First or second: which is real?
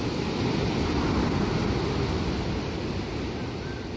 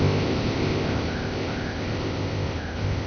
first